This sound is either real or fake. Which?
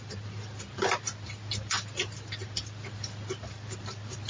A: real